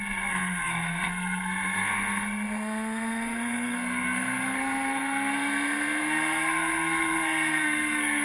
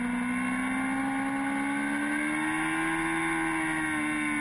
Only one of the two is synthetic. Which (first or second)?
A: first